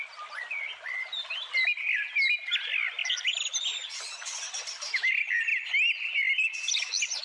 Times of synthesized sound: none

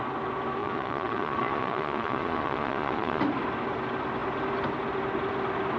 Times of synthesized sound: 0.6-3.2 (vocoder, Vocos)